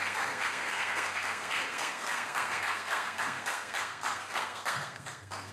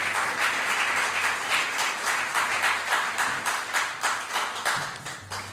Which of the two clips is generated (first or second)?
first